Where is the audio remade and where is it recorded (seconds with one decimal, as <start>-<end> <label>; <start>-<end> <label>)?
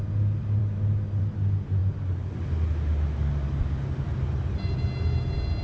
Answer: 0.0-5.6 recorded